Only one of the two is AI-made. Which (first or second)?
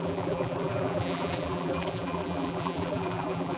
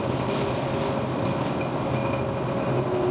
first